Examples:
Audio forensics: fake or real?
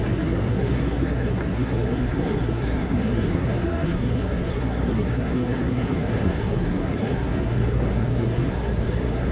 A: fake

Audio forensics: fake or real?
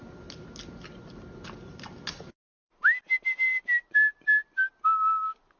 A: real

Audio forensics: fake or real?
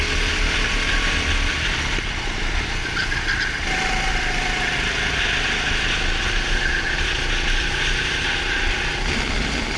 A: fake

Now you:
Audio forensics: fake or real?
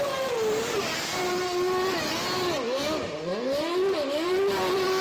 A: real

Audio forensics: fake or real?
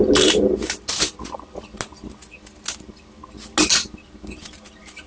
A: real